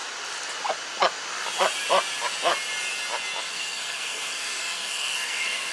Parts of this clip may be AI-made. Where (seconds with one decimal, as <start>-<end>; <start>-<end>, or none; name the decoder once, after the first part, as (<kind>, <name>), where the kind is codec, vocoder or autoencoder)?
3.4-5.7 (codec, SNAC)